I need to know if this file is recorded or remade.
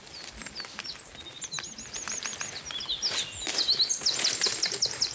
recorded